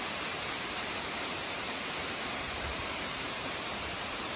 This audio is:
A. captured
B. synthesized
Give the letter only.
B